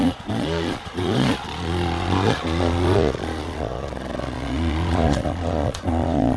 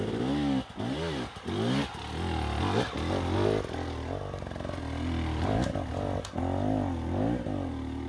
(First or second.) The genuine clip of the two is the second